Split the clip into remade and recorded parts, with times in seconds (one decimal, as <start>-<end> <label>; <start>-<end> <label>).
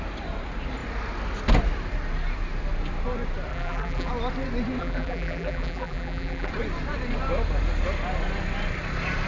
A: 0.0-3.5 recorded; 3.5-4.1 remade; 4.1-4.8 recorded; 4.8-6.5 remade; 6.5-9.3 recorded